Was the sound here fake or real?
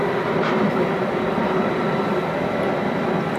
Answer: real